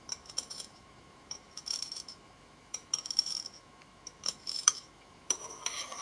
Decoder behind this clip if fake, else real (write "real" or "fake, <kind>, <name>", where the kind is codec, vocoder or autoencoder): fake, autoencoder, DAC-VAE